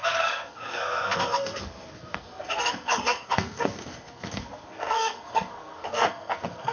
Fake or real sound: fake